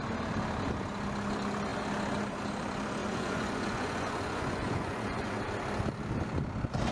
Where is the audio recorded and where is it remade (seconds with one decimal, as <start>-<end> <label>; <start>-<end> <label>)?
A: 0.0-3.0 recorded; 3.0-5.4 remade; 5.4-6.9 recorded